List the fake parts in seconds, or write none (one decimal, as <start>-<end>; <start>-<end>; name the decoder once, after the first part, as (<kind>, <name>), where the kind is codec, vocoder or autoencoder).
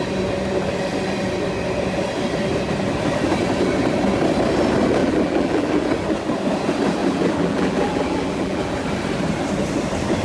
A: 5.0-5.8 (vocoder, BigVGAN v2); 7.0-8.7